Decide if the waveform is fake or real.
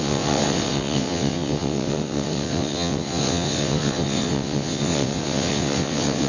fake